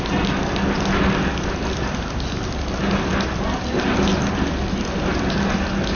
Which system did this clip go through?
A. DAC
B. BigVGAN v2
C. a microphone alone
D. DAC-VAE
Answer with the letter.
C